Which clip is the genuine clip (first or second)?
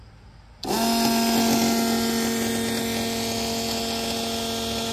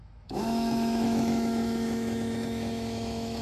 first